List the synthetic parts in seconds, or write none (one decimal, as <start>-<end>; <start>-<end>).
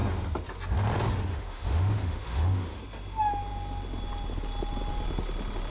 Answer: 1.3-2.8